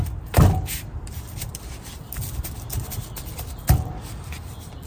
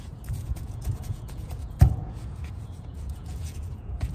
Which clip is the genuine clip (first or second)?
first